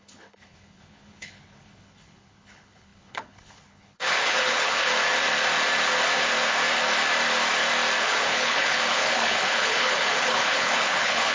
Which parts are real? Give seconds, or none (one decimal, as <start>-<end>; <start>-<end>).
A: 4.9-8.0